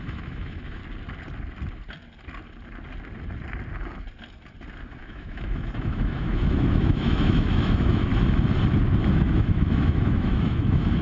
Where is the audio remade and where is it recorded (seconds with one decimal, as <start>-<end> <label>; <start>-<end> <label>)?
0.0-0.8 remade; 0.8-5.0 recorded; 5.0-8.1 remade; 8.1-9.1 recorded; 9.1-11.0 remade

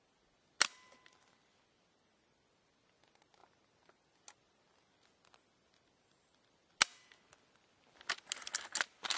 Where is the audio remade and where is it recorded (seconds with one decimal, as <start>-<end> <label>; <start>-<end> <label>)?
0.0-9.2 recorded